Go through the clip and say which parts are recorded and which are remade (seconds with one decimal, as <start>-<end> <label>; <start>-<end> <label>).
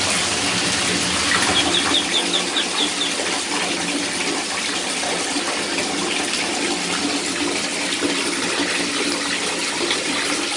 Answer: 0.0-10.6 recorded